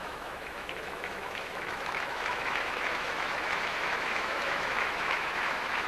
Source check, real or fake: fake